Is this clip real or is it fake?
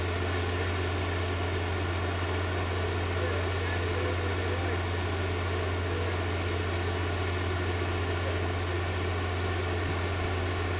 real